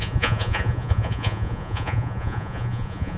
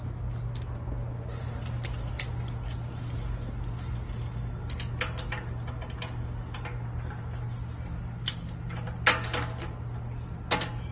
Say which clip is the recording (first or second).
second